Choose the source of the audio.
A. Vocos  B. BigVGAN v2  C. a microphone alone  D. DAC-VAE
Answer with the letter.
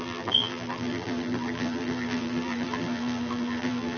B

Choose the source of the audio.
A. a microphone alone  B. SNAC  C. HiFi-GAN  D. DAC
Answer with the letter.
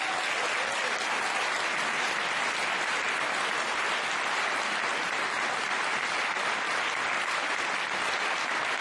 A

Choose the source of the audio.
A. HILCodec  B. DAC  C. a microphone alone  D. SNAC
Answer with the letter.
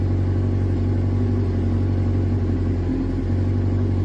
C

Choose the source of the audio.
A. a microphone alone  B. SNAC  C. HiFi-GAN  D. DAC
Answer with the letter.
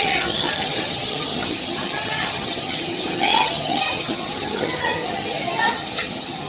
C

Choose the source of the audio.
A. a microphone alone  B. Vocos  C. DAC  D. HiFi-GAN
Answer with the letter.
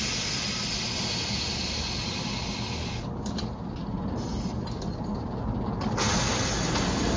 A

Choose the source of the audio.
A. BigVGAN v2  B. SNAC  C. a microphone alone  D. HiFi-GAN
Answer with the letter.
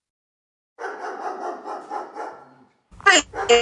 C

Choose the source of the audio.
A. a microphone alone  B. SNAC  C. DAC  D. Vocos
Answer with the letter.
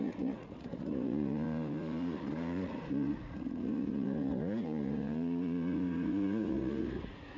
D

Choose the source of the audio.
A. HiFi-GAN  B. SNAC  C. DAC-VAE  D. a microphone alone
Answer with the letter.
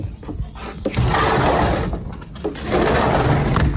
D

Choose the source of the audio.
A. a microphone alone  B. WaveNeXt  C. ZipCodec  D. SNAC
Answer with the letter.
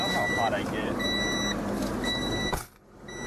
A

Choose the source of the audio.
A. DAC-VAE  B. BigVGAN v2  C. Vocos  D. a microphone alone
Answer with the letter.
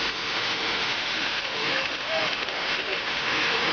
A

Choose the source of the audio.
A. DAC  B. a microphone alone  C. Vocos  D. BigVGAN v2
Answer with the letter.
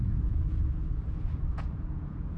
C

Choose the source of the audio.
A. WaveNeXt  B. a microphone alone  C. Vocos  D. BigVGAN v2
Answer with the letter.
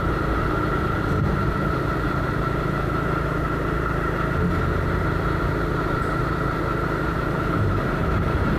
D